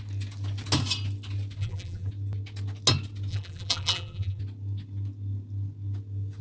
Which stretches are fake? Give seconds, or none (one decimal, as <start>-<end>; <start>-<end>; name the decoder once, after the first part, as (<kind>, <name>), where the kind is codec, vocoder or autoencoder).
1.6-2.1 (vocoder, BigVGAN v2); 3.3-4.4